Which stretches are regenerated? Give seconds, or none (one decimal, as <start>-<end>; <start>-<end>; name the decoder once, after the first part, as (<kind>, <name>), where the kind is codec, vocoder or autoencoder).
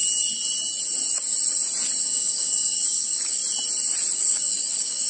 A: 2.0-3.4 (codec, DAC); 4.1-5.1